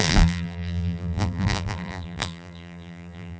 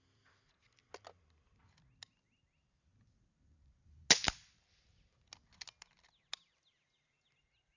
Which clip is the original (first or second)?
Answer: second